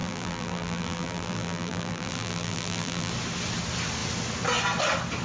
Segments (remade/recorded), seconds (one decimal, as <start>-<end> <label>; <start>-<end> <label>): 0.0-3.1 remade; 3.1-5.2 recorded